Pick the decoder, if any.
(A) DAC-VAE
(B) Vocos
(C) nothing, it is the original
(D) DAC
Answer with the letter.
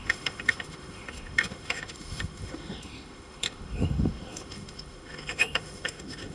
A